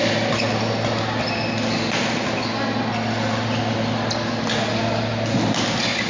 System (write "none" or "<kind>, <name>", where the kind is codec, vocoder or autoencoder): none